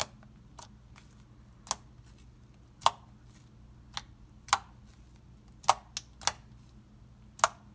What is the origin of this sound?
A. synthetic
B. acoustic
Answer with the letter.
B